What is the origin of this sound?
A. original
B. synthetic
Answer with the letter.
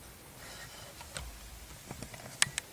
A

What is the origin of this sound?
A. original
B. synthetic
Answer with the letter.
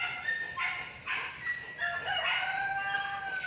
A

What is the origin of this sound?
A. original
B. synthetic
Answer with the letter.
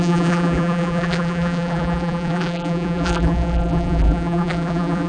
B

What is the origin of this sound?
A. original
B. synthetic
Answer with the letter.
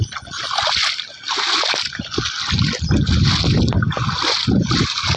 A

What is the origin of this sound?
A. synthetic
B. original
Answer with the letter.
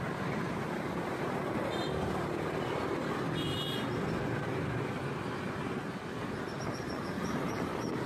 B